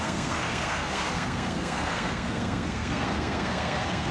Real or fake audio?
fake